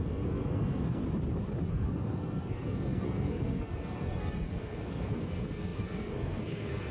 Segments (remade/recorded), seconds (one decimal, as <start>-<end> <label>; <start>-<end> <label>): 0.0-1.0 remade; 1.0-1.7 recorded; 1.7-6.9 remade

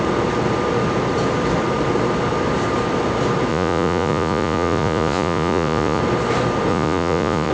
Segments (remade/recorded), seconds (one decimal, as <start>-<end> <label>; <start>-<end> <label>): 0.0-3.5 recorded; 3.5-6.0 remade; 6.0-6.7 recorded; 6.7-7.5 remade

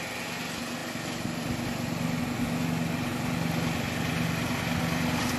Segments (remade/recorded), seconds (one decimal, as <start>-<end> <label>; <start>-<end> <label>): 0.0-5.4 recorded

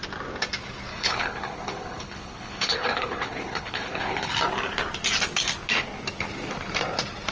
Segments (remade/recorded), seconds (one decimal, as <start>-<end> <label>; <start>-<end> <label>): 0.0-0.9 recorded; 0.9-4.3 remade; 4.3-7.3 recorded

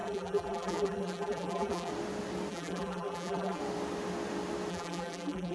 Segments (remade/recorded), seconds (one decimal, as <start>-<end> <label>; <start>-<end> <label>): 0.0-1.9 remade; 1.9-2.5 recorded; 2.5-3.6 remade; 3.6-4.7 recorded; 4.7-5.5 remade

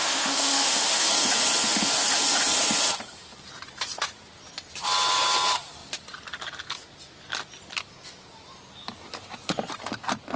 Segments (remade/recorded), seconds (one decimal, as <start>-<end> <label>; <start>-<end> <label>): 0.0-1.1 remade; 1.1-10.4 recorded

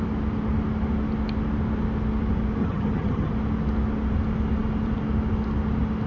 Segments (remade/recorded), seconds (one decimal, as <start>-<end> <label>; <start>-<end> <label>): 0.0-2.6 recorded; 2.6-3.3 remade; 3.3-6.1 recorded